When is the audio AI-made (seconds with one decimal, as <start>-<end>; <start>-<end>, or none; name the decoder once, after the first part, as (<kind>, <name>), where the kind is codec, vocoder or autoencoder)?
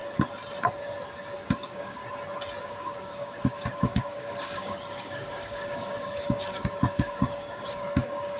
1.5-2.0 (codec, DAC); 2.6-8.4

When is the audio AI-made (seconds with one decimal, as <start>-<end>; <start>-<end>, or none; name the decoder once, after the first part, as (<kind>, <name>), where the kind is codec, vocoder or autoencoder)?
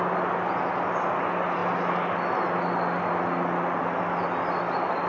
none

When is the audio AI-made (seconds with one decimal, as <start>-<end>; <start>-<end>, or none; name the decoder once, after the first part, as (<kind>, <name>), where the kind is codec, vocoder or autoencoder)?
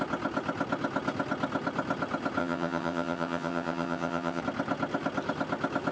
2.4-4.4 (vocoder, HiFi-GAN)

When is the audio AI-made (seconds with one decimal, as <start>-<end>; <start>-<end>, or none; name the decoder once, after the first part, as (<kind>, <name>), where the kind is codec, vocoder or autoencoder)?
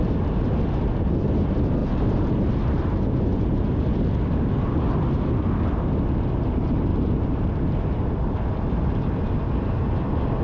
none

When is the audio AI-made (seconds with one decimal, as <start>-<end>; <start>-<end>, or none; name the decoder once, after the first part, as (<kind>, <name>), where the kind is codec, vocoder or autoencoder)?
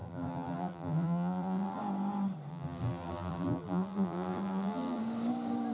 0.0-1.8 (vocoder, BigVGAN v2); 2.5-5.0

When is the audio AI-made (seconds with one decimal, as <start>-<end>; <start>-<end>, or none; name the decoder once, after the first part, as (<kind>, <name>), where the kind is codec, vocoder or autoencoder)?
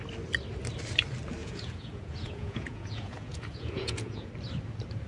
1.4-4.3 (vocoder, Vocos)